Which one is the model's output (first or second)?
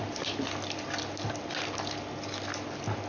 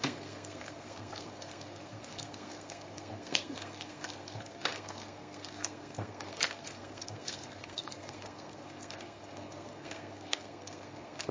second